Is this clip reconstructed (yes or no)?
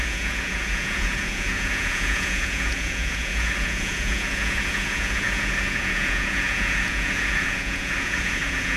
yes